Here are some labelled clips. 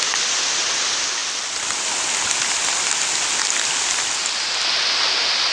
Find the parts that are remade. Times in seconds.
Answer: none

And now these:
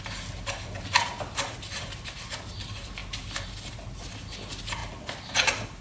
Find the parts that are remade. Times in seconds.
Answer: none

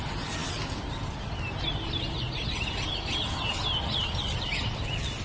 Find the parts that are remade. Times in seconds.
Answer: none

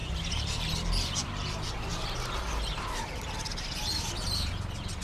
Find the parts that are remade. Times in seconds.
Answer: none

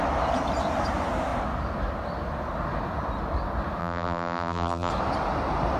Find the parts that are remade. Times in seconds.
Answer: 3.8-4.9 (vocoder, BigVGAN v2)

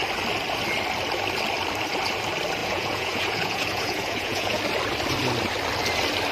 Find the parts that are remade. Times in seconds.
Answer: 2.6-4.6 (vocoder, Vocos)